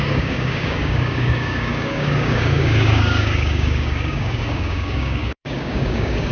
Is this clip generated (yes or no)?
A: yes